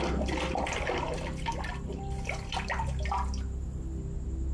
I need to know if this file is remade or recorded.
recorded